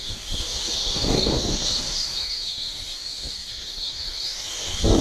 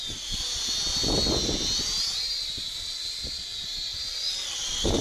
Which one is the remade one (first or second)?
first